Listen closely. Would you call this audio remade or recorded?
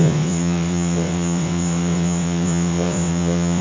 remade